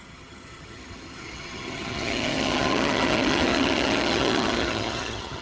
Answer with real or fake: fake